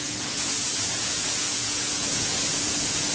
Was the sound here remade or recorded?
remade